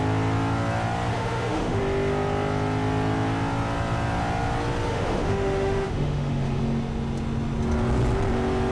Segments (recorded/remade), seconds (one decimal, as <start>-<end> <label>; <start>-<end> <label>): 0.0-1.1 recorded; 1.1-1.8 remade; 1.8-4.9 recorded; 4.9-6.6 remade; 6.6-8.7 recorded